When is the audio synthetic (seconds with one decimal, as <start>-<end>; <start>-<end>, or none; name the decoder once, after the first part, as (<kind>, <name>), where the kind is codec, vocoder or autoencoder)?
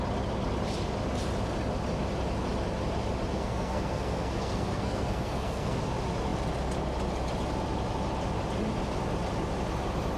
3.3-5.8 (codec, SNAC)